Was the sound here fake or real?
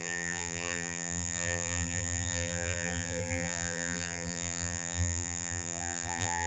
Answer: fake